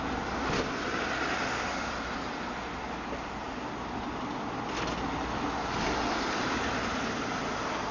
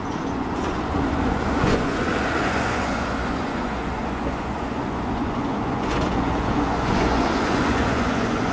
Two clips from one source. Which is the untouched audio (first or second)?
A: first